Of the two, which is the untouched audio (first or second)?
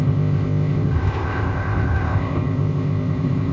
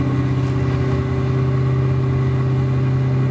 second